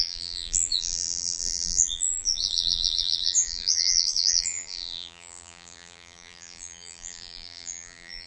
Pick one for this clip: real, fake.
fake